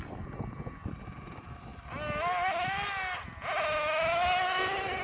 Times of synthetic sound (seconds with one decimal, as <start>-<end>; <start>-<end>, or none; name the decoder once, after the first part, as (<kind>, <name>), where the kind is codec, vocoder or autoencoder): none